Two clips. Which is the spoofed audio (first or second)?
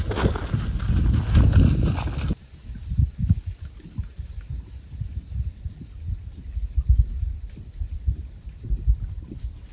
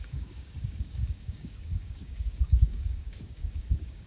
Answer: second